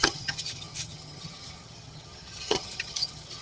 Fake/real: fake